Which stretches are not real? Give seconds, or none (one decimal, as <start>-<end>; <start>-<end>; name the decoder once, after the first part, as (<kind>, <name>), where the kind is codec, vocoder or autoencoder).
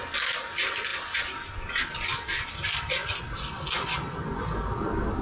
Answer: none